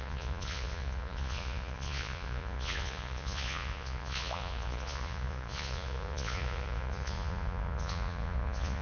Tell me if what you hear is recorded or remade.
remade